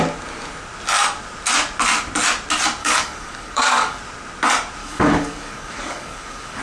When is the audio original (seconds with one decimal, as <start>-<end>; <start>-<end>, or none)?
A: 0.0-2.8; 4.0-4.8